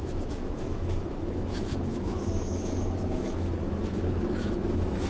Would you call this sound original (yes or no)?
no